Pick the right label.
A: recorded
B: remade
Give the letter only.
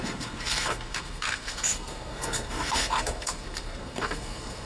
B